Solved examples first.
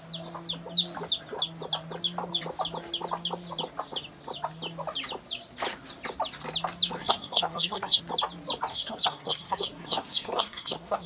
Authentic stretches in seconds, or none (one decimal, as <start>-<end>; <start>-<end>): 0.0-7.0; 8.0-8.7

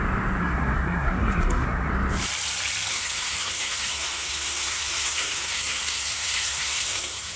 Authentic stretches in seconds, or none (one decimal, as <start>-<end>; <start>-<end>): 0.0-0.4; 1.9-2.9

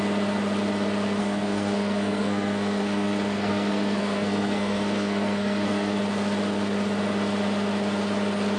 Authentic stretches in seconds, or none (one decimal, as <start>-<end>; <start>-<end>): 0.0-1.2; 6.0-8.6

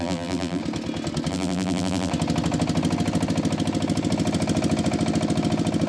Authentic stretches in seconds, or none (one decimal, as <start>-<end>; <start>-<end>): 0.6-1.3; 2.1-5.9

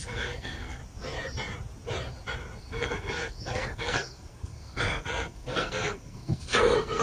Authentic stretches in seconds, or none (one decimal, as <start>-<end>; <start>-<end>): 0.8-2.6